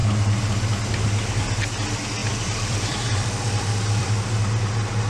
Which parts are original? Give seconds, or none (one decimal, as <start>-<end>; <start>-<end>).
0.0-2.2; 4.1-5.1